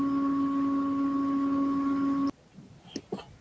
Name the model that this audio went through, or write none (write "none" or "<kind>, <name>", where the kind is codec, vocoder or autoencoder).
none